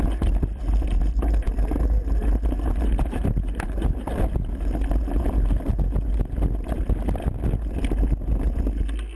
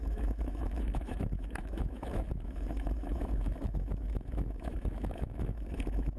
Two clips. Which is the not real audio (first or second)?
second